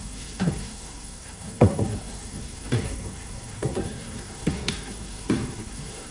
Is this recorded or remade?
remade